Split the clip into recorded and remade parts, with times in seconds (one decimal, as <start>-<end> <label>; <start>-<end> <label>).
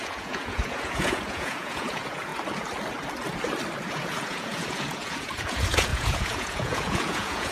0.0-2.3 remade; 2.3-3.9 recorded; 3.9-7.5 remade